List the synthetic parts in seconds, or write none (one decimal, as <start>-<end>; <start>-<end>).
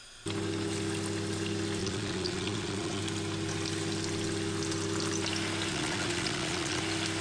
1.8-3.0; 5.7-6.8